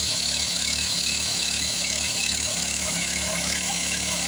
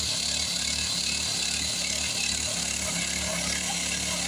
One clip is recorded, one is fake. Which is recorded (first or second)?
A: second